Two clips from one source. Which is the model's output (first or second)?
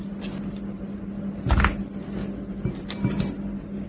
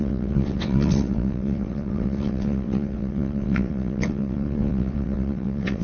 second